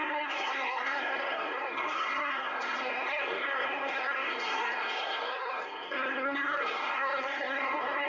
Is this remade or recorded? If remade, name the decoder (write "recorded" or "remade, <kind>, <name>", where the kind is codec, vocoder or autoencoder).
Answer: remade, codec, SNAC